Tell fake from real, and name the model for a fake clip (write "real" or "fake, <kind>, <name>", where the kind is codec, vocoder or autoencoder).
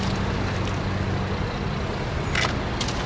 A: real